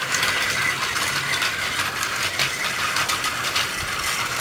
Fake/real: real